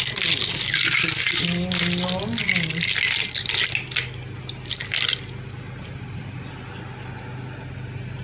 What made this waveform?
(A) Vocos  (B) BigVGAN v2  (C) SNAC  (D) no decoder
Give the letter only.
D